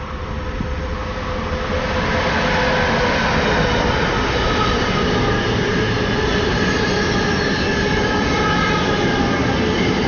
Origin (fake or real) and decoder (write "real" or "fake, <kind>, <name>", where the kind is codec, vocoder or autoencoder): real